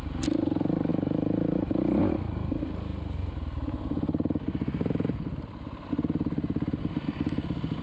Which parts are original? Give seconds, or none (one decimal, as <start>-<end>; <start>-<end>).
0.0-7.8